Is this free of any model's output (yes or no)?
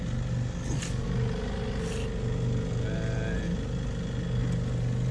yes